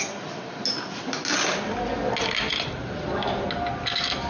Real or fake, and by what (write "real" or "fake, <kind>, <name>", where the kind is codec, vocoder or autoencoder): real